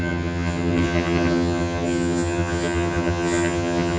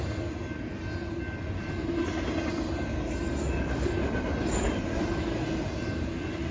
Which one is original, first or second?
second